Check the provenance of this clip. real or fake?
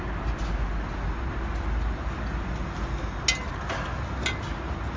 real